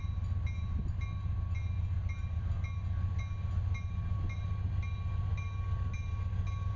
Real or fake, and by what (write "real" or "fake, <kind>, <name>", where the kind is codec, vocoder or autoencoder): real